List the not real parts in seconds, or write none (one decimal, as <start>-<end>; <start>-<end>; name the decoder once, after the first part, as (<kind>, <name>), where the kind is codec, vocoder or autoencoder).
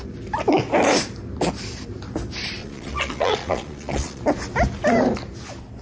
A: 2.6-4.2 (vocoder, Vocos)